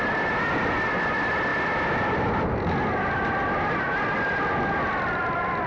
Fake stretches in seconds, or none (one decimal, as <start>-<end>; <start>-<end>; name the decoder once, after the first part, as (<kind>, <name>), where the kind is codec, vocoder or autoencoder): none